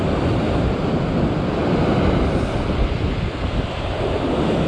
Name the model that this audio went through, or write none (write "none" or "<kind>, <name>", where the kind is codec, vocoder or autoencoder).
none